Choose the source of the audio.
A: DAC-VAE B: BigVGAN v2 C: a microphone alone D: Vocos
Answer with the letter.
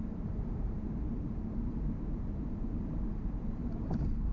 B